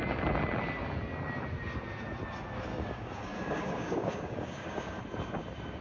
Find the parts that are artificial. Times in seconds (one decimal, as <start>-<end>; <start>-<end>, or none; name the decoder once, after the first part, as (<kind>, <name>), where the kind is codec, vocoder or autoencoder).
2.7-5.0 (codec, DAC)